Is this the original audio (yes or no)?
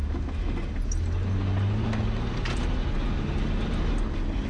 yes